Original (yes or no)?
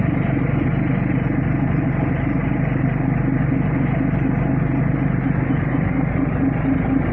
yes